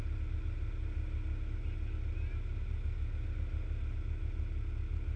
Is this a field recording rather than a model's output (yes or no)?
yes